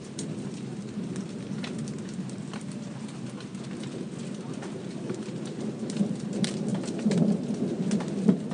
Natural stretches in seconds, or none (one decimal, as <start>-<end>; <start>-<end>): 0.0-6.7; 7.4-8.5